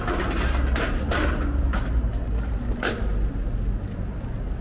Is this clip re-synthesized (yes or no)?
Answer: no